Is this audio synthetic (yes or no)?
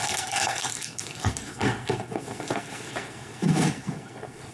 yes